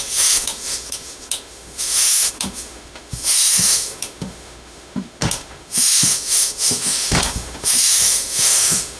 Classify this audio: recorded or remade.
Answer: remade